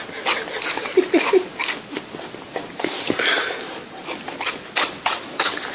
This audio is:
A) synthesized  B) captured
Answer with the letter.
B